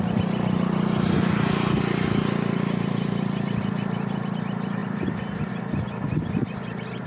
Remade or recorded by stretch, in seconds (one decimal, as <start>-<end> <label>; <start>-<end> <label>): 0.0-4.8 recorded; 4.8-5.5 remade; 5.5-7.1 recorded